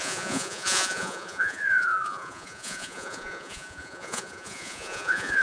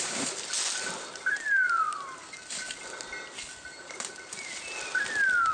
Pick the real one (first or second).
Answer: second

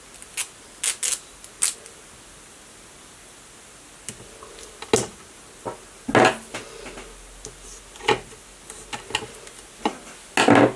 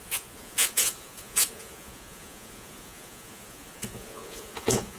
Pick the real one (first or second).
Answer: first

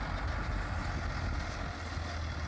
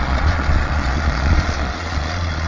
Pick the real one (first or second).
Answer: first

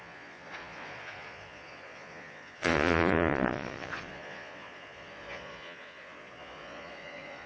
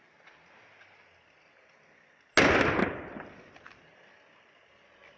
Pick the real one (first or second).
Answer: second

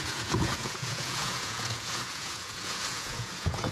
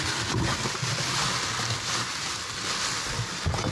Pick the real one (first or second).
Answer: second